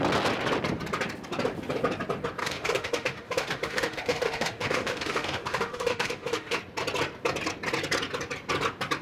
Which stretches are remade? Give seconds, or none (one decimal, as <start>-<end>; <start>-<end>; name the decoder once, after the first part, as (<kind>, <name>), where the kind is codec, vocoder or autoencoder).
2.4-6.6 (autoencoder, DAC-VAE)